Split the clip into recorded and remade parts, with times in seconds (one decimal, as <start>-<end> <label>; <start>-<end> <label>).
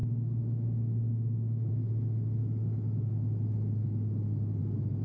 0.0-1.7 remade; 1.7-5.0 recorded